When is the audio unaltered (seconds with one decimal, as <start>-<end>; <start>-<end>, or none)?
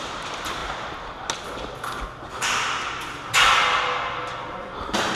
0.0-5.2